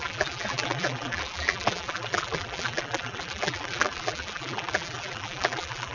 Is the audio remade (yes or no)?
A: yes